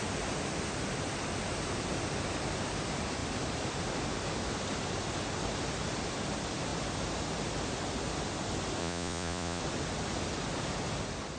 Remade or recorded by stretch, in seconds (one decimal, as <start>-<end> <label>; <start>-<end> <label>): 0.0-8.8 recorded; 8.8-9.6 remade; 9.6-11.4 recorded